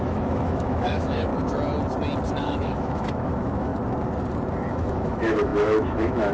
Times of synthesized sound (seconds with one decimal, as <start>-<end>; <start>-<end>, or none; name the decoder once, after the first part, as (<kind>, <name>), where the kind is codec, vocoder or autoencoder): 0.0-1.3 (autoencoder, DAC-VAE); 2.4-3.7; 4.7-6.3

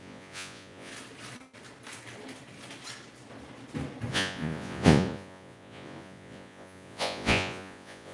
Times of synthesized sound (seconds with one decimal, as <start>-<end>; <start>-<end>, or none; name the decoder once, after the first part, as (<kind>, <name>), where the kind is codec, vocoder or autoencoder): 0.0-0.9 (vocoder, Vocos); 4.1-8.1

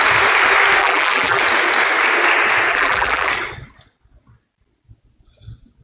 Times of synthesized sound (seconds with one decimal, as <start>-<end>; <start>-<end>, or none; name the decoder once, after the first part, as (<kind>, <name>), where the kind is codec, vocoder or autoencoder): 0.8-1.4 (vocoder, BigVGAN v2); 2.7-3.3

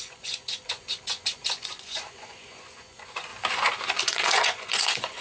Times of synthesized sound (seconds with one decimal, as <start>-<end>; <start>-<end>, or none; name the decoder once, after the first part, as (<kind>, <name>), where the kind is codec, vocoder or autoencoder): 0.0-3.3 (vocoder, Vocos); 4.0-5.2

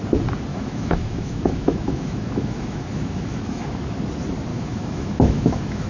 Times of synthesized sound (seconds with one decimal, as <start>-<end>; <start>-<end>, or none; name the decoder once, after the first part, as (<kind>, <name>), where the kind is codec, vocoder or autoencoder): 0.5-4.0 (autoencoder, DAC-VAE); 4.5-5.9

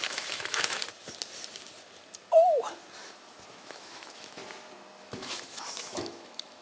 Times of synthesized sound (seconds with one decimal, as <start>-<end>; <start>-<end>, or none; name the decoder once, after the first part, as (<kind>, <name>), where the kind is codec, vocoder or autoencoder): 0.0-0.8 (autoencoder, DAC-VAE); 3.5-4.4; 5.0-6.6

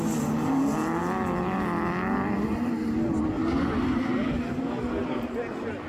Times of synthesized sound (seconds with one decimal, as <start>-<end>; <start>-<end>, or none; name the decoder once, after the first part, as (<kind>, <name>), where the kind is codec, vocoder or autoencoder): none

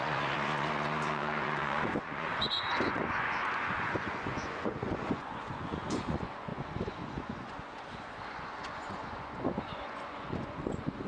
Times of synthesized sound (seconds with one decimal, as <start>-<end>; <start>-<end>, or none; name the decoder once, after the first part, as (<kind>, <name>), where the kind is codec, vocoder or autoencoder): 0.0-11.1 (vocoder, Vocos)